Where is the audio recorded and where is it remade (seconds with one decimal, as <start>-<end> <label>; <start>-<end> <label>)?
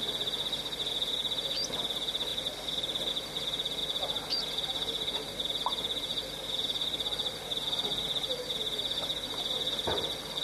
0.0-10.4 recorded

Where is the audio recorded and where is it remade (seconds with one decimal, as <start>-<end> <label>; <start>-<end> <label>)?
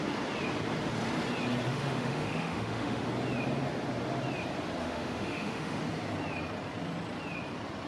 0.0-1.7 recorded; 1.7-3.1 remade; 3.1-4.8 recorded; 4.8-5.8 remade; 5.8-7.9 recorded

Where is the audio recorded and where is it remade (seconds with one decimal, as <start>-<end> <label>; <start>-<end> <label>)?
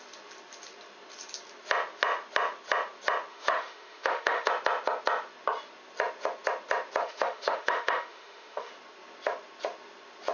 0.0-3.3 recorded; 3.3-4.5 remade; 4.5-7.0 recorded; 7.0-8.7 remade; 8.7-10.3 recorded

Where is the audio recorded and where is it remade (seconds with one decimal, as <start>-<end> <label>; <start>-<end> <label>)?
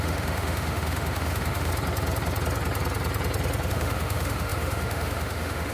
0.0-1.7 remade; 1.7-3.7 recorded; 3.7-5.7 remade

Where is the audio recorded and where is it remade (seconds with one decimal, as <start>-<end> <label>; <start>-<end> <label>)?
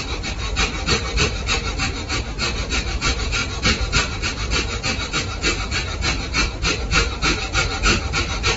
0.0-8.6 recorded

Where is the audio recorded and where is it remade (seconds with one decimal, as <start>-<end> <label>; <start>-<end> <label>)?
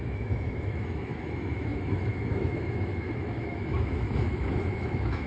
0.0-5.3 remade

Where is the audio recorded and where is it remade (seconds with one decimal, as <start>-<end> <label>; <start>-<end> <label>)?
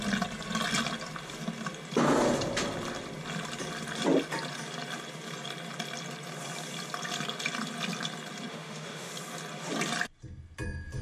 0.0-8.5 recorded; 8.5-9.1 remade; 9.1-11.0 recorded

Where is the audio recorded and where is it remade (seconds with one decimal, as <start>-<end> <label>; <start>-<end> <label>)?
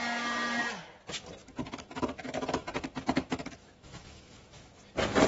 0.0-1.4 recorded; 1.4-4.6 remade; 4.6-5.3 recorded